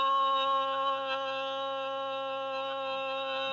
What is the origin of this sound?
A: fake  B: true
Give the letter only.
B